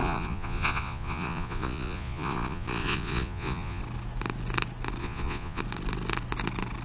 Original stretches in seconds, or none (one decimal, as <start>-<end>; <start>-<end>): 3.8-5.0; 5.6-6.8